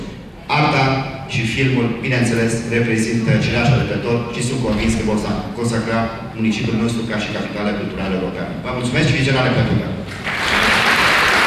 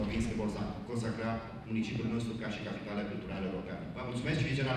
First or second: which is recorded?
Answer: first